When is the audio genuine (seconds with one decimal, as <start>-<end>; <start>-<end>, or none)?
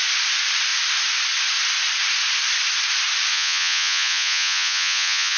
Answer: 0.0-3.3